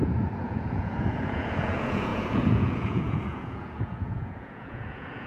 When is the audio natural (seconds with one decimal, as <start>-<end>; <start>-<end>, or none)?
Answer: none